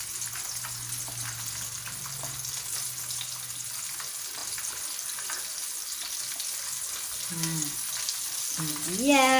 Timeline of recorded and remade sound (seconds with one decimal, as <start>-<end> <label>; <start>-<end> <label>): 0.0-9.4 recorded